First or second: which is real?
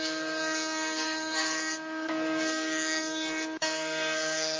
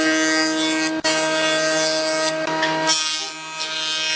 second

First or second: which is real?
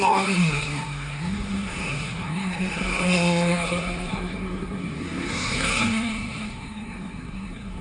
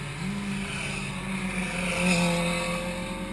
second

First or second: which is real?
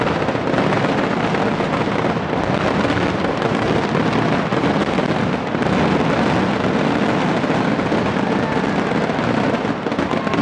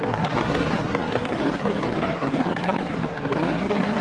first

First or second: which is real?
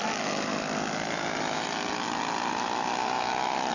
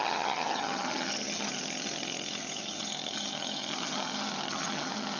first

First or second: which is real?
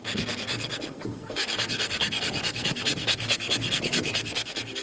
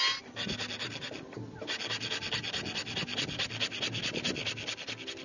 second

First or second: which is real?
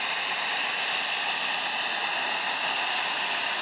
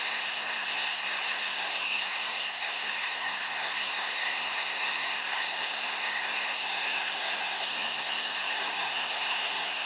first